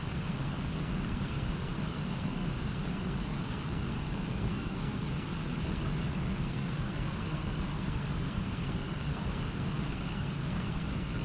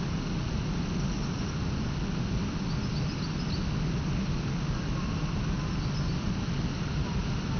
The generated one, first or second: first